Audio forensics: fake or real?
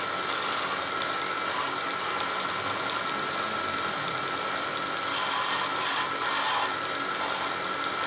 real